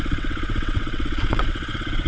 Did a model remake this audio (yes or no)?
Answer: yes